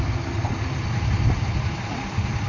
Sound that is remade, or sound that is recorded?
recorded